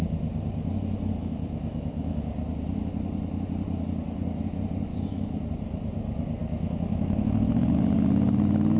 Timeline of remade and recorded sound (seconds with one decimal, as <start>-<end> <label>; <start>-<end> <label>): 0.0-1.2 recorded; 1.2-2.2 remade; 2.2-4.9 recorded; 4.9-5.5 remade; 5.5-6.4 recorded; 6.4-7.8 remade; 7.8-8.8 recorded